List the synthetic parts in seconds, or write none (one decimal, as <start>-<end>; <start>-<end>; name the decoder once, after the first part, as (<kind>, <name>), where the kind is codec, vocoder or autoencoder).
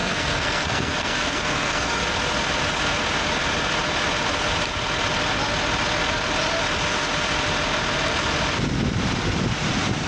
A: 0.0-2.1 (codec, SNAC)